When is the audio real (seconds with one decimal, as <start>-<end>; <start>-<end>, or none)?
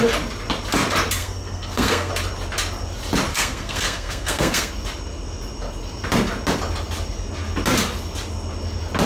0.0-1.2; 2.1-3.3; 4.7-9.1